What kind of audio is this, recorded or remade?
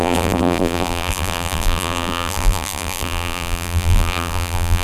remade